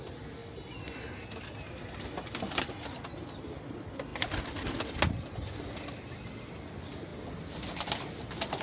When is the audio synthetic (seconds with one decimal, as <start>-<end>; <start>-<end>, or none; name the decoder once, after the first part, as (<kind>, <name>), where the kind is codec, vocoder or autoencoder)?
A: none